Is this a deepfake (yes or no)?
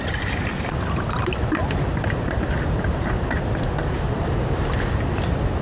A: no